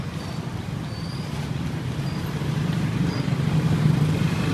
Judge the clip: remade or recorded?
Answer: remade